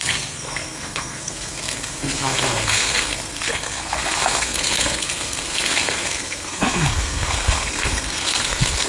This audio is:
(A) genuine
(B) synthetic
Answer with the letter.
B